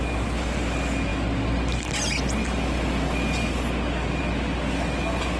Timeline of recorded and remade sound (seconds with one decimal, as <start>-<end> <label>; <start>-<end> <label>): 0.0-5.4 recorded